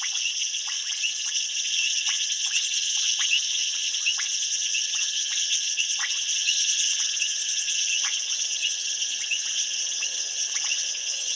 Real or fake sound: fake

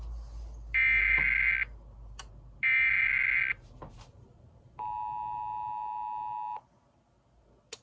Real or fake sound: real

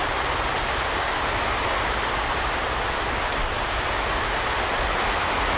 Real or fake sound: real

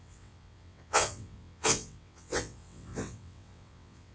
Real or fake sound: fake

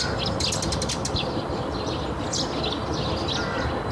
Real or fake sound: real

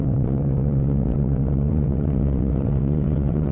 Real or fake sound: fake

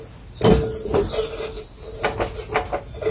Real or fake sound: real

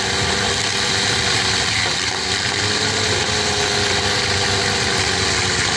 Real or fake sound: real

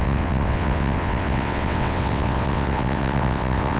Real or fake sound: fake